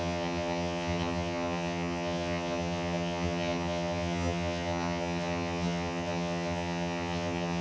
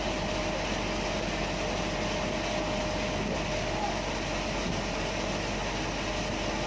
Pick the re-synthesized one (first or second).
first